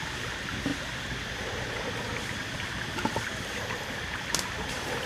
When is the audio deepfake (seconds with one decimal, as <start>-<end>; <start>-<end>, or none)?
none

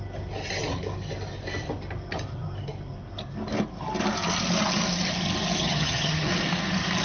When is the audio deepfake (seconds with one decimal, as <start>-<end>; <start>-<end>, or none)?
5.6-6.3